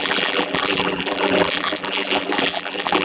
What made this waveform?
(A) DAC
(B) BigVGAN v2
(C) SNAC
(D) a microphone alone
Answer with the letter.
B